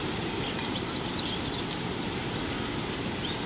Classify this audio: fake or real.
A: real